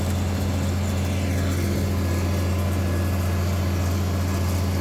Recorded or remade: recorded